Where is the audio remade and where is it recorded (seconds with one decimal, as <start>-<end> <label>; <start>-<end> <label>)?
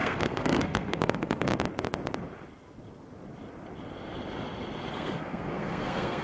0.0-1.5 remade; 1.5-4.9 recorded; 4.9-6.2 remade